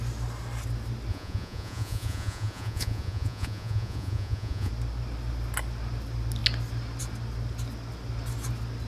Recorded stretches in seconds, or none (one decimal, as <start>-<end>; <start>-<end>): 0.0-1.1; 4.7-8.9